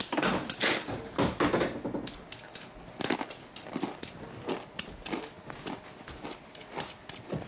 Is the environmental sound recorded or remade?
recorded